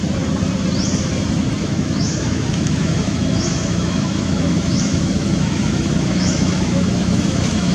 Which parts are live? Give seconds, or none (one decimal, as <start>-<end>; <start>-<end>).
0.0-1.6

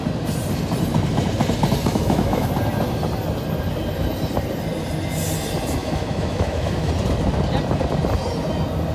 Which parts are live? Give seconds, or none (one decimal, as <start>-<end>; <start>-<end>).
0.0-1.9; 2.5-5.8; 6.9-8.9

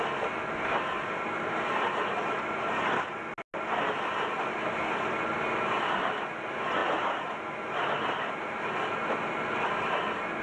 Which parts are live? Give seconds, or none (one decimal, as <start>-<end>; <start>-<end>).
0.0-10.4